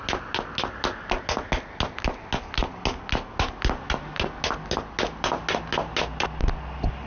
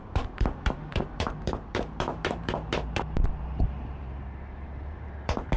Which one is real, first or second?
first